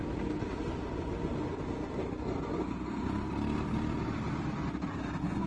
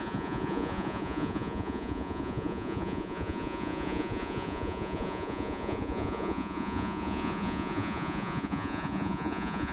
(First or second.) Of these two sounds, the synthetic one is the second